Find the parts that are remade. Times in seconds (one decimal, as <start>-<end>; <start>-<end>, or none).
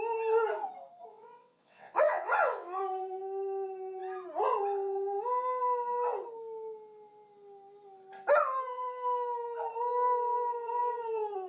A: 1.1-2.8